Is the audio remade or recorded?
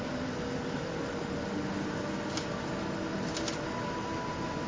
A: recorded